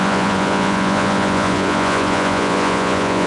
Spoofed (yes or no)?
yes